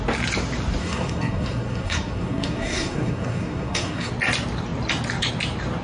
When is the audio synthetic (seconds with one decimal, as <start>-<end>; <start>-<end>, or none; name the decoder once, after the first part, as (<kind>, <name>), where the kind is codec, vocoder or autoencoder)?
0.8-4.1 (codec, SNAC)

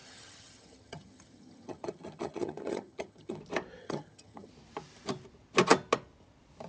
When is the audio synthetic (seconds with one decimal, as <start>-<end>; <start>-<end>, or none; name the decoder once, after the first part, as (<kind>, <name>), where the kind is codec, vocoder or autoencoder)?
0.0-3.4 (vocoder, HiFi-GAN); 3.8-4.5

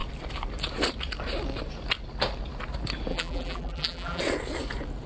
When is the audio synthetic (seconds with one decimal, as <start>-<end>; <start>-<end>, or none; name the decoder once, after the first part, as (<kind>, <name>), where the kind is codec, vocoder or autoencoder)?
3.1-4.2 (vocoder, BigVGAN v2)

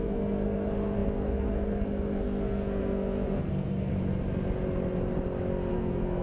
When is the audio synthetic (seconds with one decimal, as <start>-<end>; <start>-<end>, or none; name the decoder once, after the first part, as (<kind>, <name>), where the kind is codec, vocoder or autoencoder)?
0.0-3.9 (codec, SNAC); 5.7-6.2

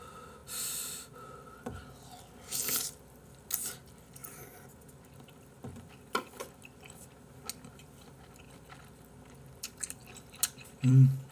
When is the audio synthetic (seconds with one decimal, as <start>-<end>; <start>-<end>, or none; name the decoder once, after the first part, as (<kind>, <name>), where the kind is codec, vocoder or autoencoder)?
none

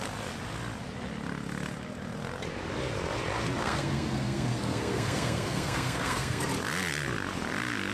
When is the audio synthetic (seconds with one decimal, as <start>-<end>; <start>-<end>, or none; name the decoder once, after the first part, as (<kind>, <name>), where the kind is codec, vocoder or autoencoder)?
3.6-6.4 (codec, SNAC)

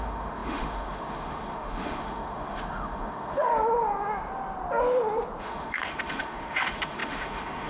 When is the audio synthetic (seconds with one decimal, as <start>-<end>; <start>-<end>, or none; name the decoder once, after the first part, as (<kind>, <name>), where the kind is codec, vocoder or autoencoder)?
0.0-3.5 (autoencoder, DAC-VAE); 5.4-7.7